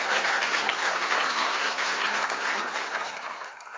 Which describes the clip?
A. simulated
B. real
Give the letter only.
A